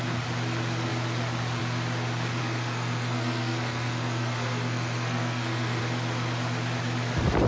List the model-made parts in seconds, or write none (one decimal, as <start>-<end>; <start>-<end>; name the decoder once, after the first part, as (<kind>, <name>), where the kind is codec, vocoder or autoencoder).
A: 2.4-5.8 (codec, SNAC)